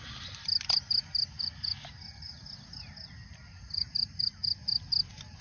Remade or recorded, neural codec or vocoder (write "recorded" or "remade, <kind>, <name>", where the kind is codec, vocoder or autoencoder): recorded